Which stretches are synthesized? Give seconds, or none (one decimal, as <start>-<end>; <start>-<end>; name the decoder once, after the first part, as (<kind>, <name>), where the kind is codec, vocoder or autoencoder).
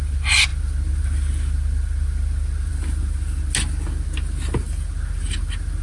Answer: none